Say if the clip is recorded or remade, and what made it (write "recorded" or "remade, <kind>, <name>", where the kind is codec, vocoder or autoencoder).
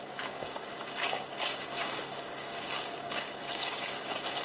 remade, codec, DAC